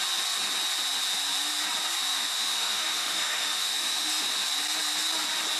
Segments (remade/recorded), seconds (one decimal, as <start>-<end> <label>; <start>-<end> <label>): 0.0-2.2 recorded; 2.2-4.1 remade; 4.1-5.6 recorded